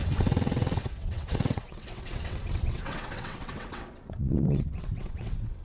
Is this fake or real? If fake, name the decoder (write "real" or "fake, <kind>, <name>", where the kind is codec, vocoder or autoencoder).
fake, vocoder, WaveNeXt